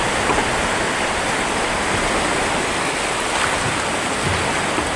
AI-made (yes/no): no